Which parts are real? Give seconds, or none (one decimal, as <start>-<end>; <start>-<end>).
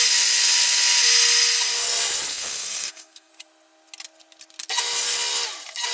0.0-2.3; 3.3-5.9